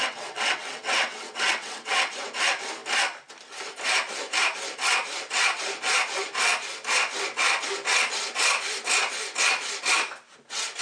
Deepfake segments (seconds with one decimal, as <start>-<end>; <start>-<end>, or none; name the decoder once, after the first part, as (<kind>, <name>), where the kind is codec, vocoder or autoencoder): 0.0-2.1 (vocoder, WaveNeXt)